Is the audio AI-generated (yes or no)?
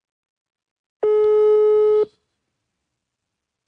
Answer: no